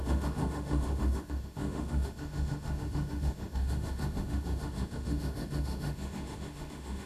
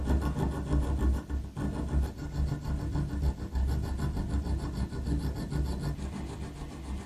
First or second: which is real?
second